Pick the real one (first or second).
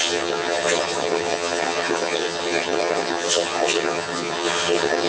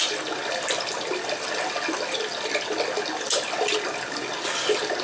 second